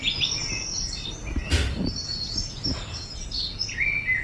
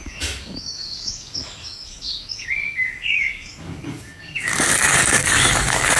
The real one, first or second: first